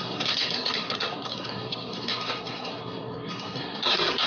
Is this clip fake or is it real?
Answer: fake